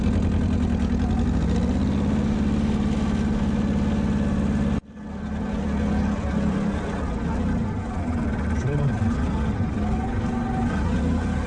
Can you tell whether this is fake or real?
real